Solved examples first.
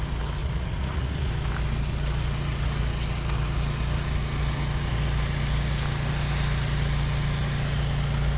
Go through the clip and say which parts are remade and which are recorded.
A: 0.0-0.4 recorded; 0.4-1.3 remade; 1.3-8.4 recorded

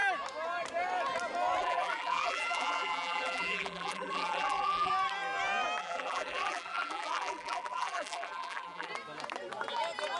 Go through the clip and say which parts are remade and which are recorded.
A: 0.0-1.6 recorded; 1.6-4.9 remade; 4.9-5.8 recorded; 5.8-8.9 remade; 8.9-10.2 recorded

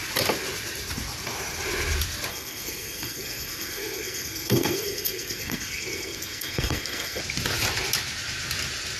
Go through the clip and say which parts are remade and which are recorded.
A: 0.0-2.3 recorded; 2.3-7.2 remade; 7.2-9.0 recorded